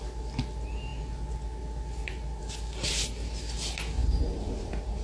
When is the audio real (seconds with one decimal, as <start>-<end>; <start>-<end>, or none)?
0.0-5.0